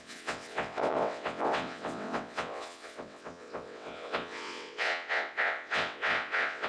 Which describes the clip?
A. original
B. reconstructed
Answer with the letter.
B